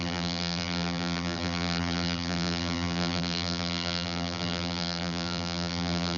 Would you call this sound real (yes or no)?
no